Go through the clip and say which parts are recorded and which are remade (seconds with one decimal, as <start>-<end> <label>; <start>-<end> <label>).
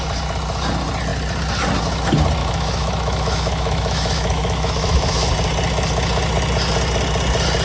0.0-2.4 recorded; 2.4-5.3 remade; 5.3-7.6 recorded